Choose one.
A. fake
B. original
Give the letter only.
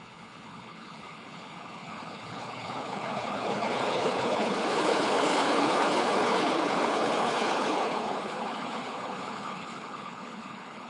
A